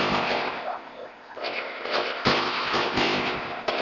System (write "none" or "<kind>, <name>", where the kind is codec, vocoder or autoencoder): codec, ZipCodec